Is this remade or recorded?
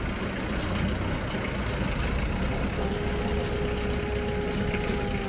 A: recorded